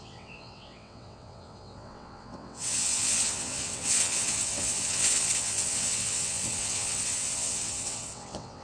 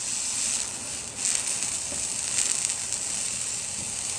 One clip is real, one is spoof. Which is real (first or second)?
second